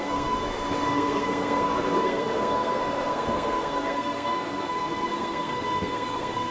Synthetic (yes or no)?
yes